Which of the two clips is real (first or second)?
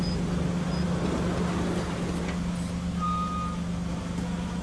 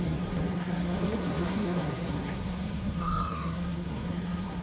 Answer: first